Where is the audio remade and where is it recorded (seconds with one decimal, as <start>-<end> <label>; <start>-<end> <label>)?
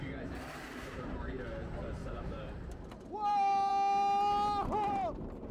0.0-0.7 recorded; 0.7-1.5 remade; 1.5-2.0 recorded; 2.0-3.7 remade; 3.7-5.5 recorded